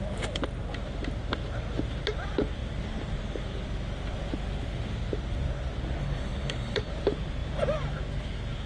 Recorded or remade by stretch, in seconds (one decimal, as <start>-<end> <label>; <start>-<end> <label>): 0.0-6.0 recorded; 6.0-6.9 remade; 6.9-8.7 recorded